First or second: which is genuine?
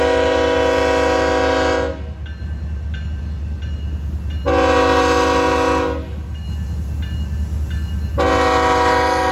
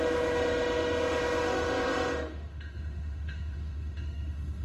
first